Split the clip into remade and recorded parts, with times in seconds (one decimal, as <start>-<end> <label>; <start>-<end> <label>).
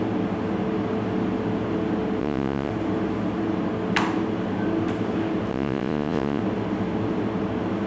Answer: 0.0-2.2 recorded; 2.2-2.7 remade; 2.7-5.5 recorded; 5.5-6.4 remade; 6.4-7.9 recorded